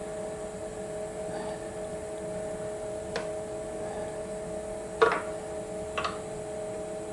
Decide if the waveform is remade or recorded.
recorded